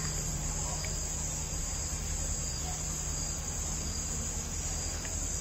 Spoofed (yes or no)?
no